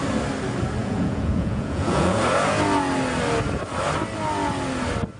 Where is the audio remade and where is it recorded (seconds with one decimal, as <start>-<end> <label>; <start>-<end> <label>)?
0.0-0.8 recorded; 0.8-2.2 remade; 2.2-5.2 recorded